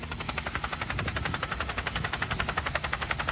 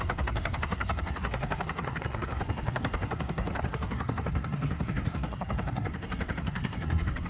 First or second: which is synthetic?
second